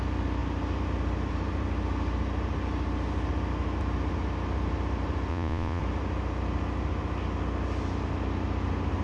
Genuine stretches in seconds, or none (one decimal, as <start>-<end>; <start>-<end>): 0.0-5.3; 5.8-9.0